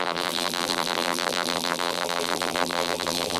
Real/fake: fake